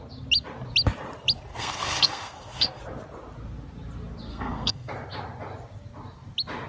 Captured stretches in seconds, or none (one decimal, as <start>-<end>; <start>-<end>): 0.0-1.5; 2.8-4.3; 4.9-6.7